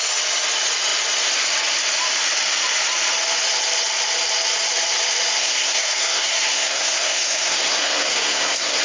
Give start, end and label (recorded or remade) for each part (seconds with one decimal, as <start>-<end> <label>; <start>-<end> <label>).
0.0-5.4 recorded; 5.4-8.8 remade